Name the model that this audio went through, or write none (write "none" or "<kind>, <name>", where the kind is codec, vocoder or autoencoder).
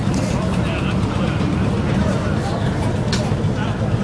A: none